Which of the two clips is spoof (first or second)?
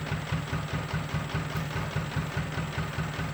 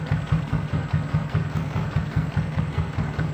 second